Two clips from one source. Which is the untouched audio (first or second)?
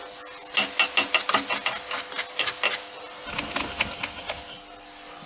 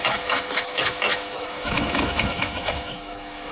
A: first